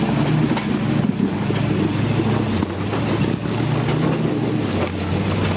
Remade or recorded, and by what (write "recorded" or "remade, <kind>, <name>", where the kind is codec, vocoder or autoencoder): recorded